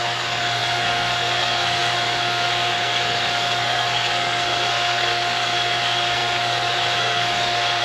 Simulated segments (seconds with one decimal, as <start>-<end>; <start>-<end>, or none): 0.0-7.8